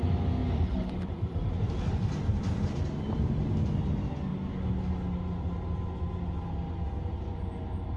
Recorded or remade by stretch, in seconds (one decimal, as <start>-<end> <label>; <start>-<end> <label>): 0.0-0.4 recorded; 0.4-3.5 remade; 3.5-8.0 recorded